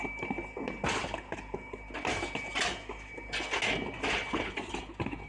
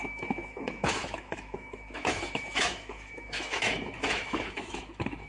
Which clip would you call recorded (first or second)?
first